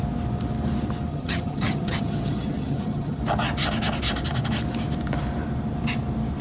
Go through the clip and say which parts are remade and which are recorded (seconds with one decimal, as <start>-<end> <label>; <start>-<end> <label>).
0.0-1.1 recorded; 1.1-3.2 remade; 3.2-6.4 recorded